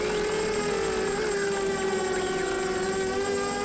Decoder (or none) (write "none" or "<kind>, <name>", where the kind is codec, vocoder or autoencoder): none